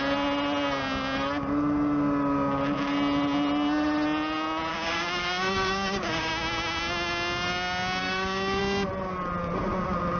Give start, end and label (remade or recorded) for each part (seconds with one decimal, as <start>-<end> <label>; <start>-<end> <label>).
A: 0.0-4.7 recorded; 4.7-6.3 remade; 6.3-8.0 recorded; 8.0-8.6 remade; 8.6-10.2 recorded